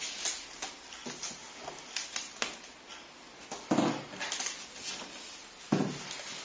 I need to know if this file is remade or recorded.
recorded